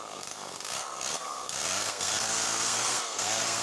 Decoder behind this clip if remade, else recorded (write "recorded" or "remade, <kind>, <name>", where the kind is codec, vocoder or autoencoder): remade, codec, SNAC